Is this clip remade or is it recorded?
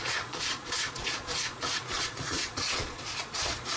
remade